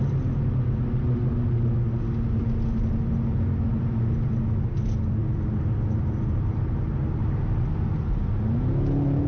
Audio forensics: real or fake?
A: real